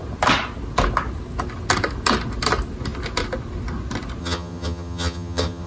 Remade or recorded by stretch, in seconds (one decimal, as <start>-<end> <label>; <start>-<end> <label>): 0.0-4.2 recorded; 4.2-5.7 remade